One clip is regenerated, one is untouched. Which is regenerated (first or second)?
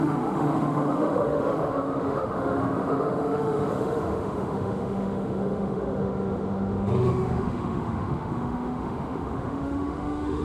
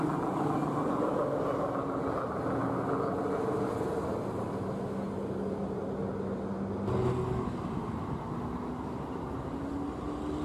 first